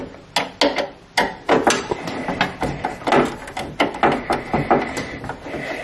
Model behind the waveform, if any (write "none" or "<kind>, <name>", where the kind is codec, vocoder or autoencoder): none